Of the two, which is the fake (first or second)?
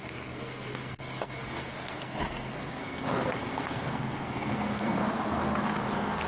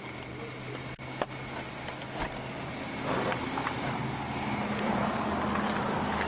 first